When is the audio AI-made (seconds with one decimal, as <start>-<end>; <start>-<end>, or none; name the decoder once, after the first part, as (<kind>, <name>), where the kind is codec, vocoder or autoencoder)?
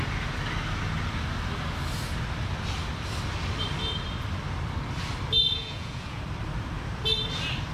5.4-6.2 (vocoder, Vocos)